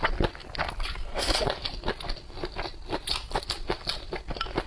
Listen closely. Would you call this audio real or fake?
real